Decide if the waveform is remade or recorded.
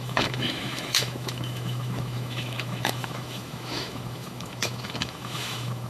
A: remade